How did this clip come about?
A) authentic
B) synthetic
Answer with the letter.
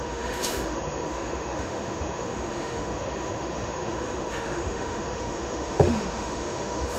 B